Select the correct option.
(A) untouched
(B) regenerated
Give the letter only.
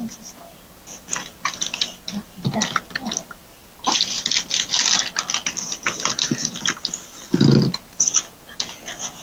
A